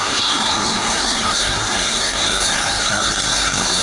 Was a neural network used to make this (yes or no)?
yes